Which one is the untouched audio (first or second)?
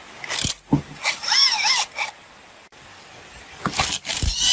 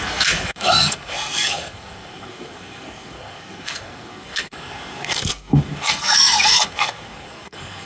first